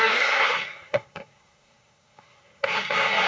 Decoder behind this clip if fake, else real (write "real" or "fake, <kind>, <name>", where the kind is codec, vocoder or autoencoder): fake, codec, SNAC